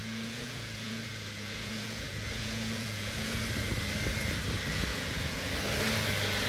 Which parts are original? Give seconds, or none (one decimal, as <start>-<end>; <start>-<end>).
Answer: 3.4-4.9; 5.5-6.5